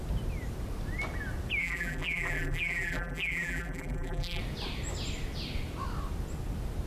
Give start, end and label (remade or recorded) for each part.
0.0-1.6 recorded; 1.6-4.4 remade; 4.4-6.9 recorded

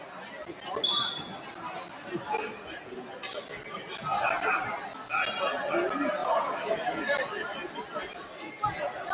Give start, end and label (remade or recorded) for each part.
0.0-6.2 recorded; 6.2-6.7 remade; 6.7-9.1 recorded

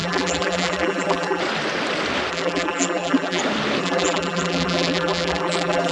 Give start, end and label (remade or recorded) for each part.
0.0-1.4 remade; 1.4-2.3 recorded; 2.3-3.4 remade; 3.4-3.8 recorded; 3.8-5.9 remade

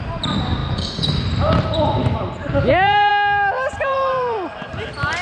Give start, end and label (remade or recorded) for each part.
0.0-3.1 remade; 3.1-3.8 recorded; 3.8-5.2 remade

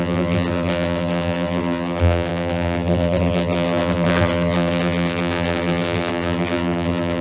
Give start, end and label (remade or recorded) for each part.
0.0-7.2 remade